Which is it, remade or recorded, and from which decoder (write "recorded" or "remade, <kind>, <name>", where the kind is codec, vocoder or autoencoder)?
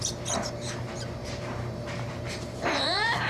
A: remade, vocoder, BigVGAN v2